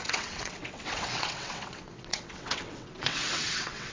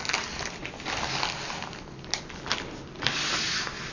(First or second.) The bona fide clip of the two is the second